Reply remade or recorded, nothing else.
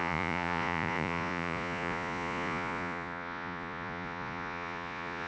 remade